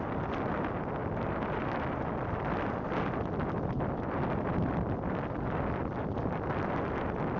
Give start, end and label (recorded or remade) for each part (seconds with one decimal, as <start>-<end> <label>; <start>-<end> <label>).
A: 0.0-1.0 recorded; 1.0-5.3 remade; 5.3-7.4 recorded